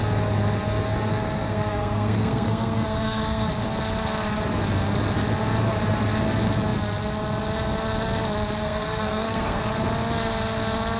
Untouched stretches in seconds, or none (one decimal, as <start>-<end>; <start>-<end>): 0.0-1.1; 3.5-8.6; 9.6-11.0